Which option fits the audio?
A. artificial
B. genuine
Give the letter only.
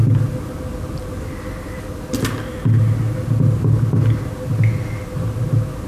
B